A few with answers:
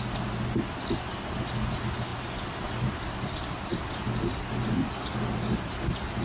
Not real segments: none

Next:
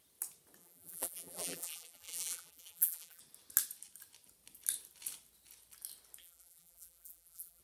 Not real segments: 0.6-3.2 (vocoder, BigVGAN v2); 6.2-7.6

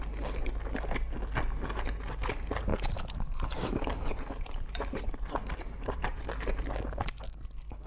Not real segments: 2.7-6.3 (vocoder, BigVGAN v2)

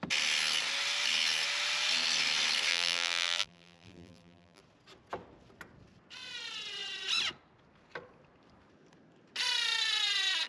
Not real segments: 2.7-4.6 (vocoder, BigVGAN v2)

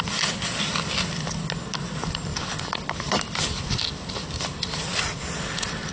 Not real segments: none

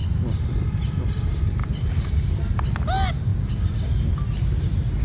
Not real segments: 0.0-1.0 (vocoder, BigVGAN v2); 1.6-2.7; 3.3-4.1

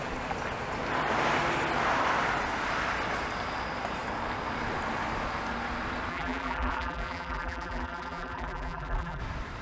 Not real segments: 6.1-9.2 (vocoder, BigVGAN v2)

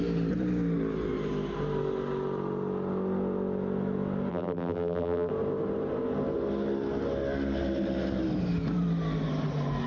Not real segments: 4.3-5.3 (vocoder, BigVGAN v2)